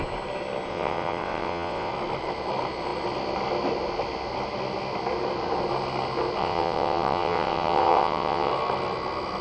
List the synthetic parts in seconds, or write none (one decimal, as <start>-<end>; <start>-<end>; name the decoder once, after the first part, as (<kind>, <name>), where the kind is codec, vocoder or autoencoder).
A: 0.7-1.9 (vocoder, WaveNeXt); 6.4-8.5